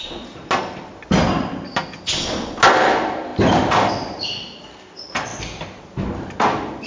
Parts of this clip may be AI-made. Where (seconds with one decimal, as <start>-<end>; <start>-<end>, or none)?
5.3-6.1